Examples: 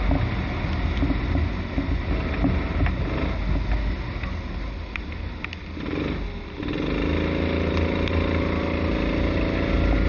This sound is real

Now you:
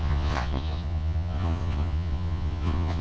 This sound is fake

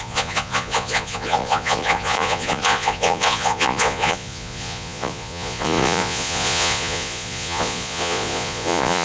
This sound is fake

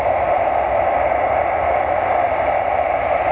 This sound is real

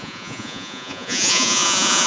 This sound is fake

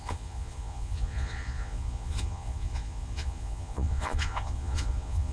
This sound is fake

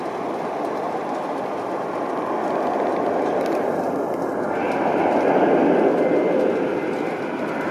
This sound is real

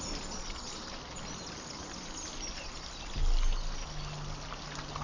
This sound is real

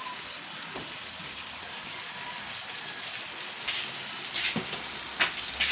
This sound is real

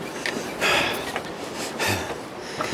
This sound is real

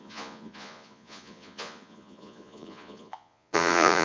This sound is fake